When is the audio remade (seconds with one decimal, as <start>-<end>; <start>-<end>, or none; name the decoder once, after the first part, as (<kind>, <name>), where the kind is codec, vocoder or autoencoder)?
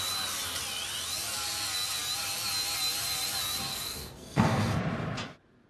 3.7-4.8 (codec, SNAC)